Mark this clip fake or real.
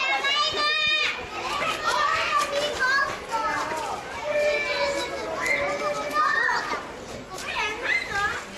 real